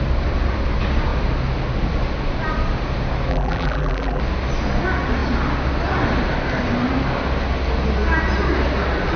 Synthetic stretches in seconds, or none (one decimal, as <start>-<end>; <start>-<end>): 3.3-4.2